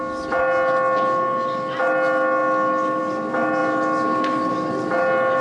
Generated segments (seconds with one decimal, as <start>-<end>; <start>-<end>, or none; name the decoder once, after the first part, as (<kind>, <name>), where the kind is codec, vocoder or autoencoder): none